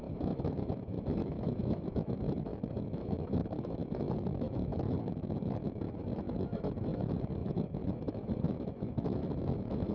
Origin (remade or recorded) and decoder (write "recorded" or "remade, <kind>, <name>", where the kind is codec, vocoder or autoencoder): remade, autoencoder, DAC-VAE